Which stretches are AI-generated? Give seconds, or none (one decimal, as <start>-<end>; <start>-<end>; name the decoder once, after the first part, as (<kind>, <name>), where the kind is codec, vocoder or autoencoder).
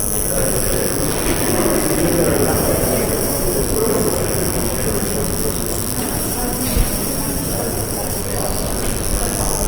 2.5-3.6 (vocoder, BigVGAN v2); 6.0-8.2